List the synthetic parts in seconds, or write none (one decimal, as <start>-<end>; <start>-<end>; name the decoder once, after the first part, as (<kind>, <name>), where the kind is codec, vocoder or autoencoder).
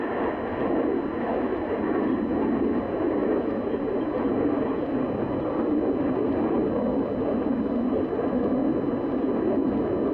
none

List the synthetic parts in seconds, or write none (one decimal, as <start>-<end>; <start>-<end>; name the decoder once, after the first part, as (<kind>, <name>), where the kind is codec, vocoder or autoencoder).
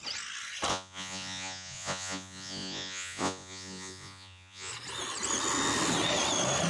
0.7-4.7 (vocoder, Vocos)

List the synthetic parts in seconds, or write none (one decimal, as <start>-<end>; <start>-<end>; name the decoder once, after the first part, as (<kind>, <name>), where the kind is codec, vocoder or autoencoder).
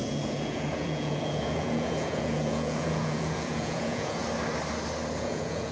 0.0-4.2 (vocoder, Vocos); 5.2-5.7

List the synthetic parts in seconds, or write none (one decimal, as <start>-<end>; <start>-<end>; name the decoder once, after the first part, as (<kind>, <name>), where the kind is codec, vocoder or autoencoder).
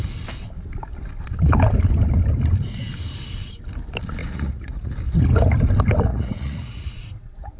4.2-4.9 (vocoder, Vocos); 6.1-7.6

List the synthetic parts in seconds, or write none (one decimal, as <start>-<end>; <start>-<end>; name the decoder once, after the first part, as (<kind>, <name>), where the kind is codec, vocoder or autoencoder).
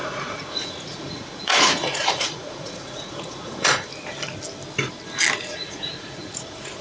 0.0-3.9 (vocoder, Vocos); 5.5-6.8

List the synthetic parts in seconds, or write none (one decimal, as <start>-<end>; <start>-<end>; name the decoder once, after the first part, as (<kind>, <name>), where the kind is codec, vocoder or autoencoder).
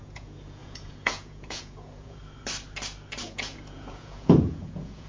0.0-2.2 (vocoder, Vocos); 3.2-5.1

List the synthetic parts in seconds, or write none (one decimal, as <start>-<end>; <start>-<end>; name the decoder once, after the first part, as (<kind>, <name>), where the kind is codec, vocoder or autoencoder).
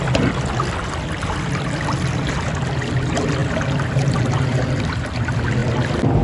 none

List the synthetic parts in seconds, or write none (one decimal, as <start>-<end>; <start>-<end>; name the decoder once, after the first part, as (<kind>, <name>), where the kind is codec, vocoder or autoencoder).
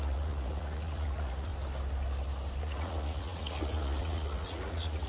0.0-1.5 (vocoder, Vocos); 2.6-5.1